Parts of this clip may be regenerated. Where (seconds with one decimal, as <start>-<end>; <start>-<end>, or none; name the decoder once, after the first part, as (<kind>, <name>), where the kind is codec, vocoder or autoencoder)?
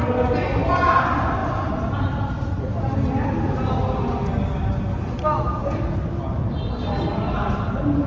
none